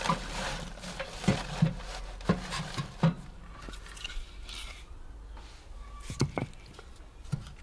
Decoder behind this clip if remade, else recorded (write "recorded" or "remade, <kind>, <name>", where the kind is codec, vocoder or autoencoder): recorded